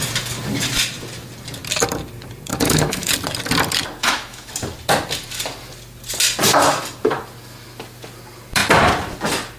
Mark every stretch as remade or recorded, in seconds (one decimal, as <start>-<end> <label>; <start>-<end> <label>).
0.0-2.5 recorded; 2.5-3.1 remade; 3.1-4.0 recorded; 4.0-4.5 remade; 4.5-9.6 recorded